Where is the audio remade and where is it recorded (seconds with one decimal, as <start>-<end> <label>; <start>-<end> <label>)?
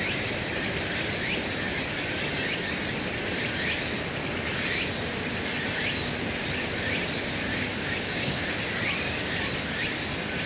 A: 0.0-7.5 recorded; 7.5-8.4 remade; 8.4-10.5 recorded